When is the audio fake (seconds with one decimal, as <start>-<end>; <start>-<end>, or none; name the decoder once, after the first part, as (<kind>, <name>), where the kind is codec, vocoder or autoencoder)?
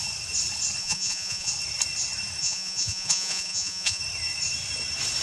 0.8-1.5 (vocoder, Vocos); 2.4-4.0